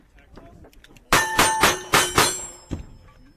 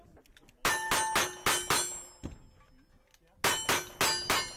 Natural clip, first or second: second